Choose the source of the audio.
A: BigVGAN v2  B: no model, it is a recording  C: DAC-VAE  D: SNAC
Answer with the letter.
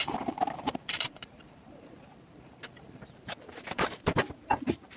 A